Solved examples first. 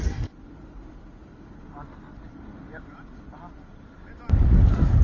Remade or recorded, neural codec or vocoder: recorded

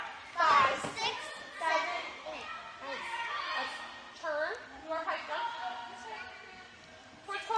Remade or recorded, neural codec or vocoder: recorded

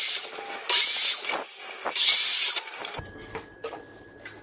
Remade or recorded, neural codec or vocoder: recorded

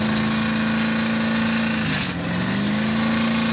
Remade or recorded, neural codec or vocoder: recorded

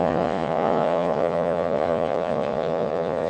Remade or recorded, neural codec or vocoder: remade, vocoder, Vocos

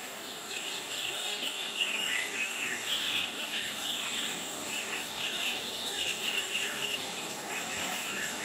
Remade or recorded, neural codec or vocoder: remade, codec, DAC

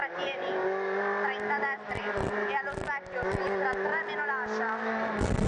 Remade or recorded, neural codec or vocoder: recorded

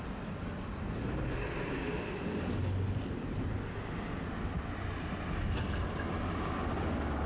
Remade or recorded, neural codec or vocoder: recorded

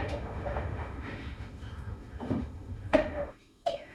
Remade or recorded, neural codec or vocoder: remade, autoencoder, DAC-VAE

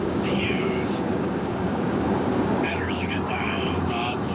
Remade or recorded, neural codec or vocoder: remade, codec, DAC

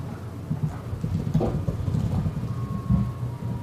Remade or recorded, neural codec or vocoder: recorded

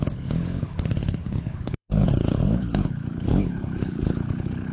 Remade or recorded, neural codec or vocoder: remade, codec, HILCodec